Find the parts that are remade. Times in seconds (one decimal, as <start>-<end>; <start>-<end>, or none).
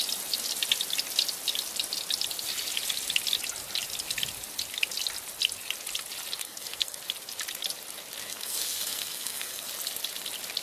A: 6.4-7.0; 8.2-9.7